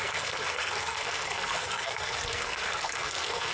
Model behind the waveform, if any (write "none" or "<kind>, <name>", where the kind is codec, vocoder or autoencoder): codec, SNAC